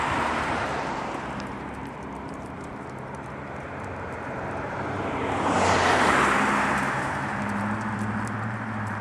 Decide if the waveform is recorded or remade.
remade